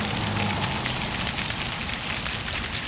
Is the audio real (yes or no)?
yes